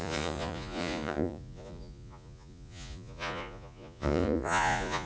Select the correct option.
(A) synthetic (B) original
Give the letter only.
A